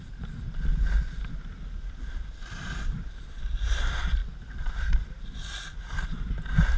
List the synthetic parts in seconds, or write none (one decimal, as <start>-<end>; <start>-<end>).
none